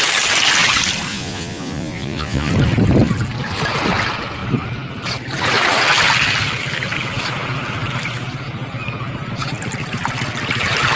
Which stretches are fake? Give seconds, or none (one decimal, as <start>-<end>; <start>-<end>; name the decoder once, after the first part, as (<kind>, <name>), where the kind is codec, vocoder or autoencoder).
1.1-2.5 (vocoder, Vocos)